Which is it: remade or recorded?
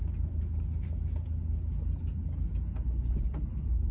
recorded